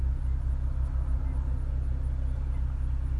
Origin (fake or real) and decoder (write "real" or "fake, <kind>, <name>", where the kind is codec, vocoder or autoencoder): real